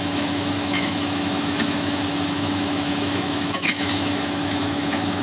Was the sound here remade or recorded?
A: remade